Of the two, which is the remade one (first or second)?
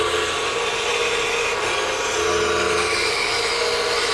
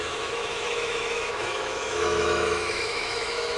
second